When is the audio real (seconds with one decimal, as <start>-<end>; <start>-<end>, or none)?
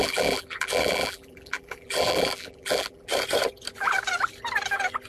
3.1-5.1